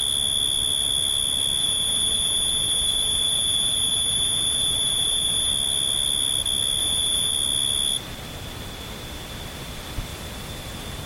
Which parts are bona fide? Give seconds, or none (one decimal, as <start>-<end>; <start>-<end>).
0.0-1.6; 5.5-6.8; 7.3-10.1